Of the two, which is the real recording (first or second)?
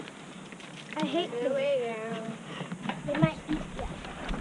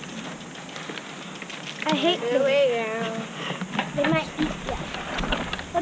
second